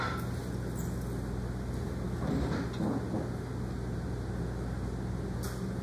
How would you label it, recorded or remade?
recorded